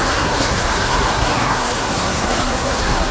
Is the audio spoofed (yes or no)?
yes